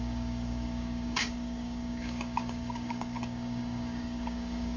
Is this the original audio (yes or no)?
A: no